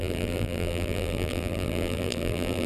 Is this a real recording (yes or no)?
no